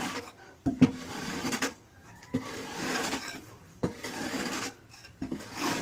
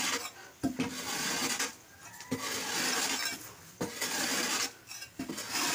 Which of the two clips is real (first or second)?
second